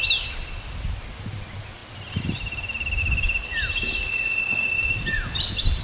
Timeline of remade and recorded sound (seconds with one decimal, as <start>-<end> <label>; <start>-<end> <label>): 0.0-5.8 recorded